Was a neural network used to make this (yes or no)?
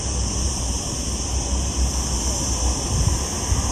no